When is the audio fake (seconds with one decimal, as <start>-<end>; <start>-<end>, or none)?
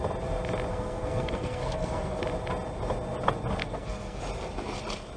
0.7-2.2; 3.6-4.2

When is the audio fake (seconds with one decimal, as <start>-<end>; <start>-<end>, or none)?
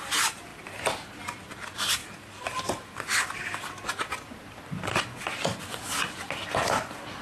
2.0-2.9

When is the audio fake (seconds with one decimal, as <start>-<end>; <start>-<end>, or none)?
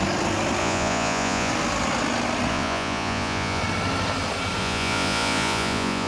0.6-1.5; 2.5-3.6; 4.6-6.1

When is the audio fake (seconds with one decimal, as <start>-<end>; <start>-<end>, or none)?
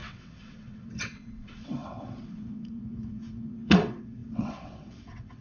0.0-5.4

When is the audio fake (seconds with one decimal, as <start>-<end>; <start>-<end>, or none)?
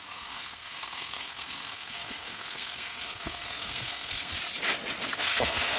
0.0-4.3; 5.1-5.8